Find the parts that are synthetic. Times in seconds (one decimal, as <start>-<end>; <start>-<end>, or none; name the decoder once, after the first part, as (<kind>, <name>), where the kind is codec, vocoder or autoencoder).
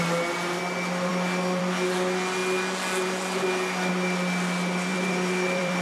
4.9-5.8 (vocoder, BigVGAN v2)